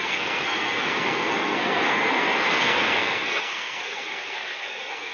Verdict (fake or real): fake